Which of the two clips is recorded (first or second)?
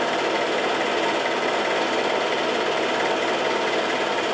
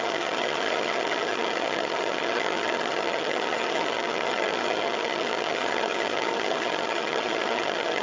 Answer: first